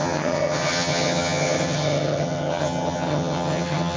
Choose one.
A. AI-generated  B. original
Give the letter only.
A